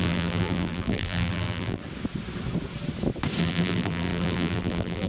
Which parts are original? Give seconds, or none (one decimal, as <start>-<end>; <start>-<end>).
1.8-3.4